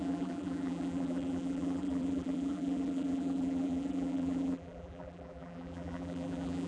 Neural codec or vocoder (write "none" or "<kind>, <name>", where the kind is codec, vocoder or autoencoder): vocoder, BigVGAN v2